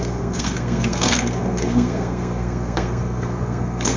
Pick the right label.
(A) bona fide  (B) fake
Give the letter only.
B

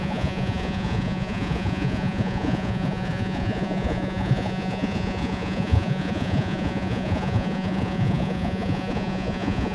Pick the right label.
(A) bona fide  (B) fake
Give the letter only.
B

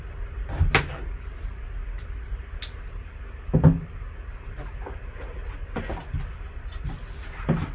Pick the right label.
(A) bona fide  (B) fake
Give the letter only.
A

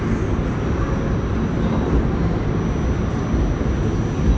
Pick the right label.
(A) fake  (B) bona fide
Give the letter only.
B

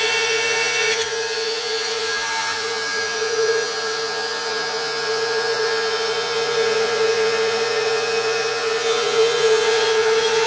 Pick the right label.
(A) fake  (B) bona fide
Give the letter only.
A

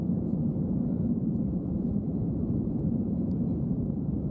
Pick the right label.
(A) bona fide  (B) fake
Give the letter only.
B